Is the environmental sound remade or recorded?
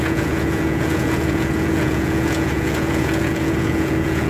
remade